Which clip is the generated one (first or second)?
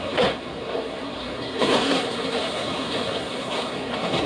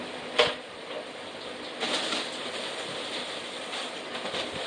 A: first